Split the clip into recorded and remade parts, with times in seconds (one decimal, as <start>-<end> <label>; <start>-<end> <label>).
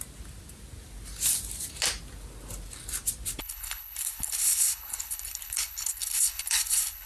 0.0-3.4 recorded; 3.4-7.1 remade